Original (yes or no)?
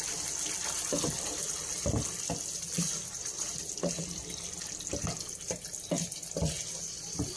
yes